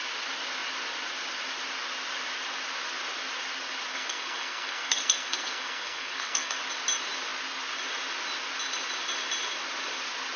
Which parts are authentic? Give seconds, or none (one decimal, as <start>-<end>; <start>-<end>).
0.0-3.9; 6.6-10.4